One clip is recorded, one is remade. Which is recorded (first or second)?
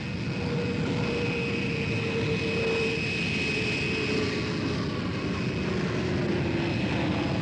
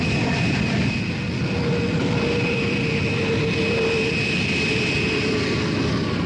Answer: first